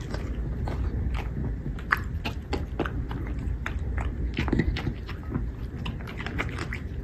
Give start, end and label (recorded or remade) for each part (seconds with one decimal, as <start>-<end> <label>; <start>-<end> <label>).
0.0-7.0 recorded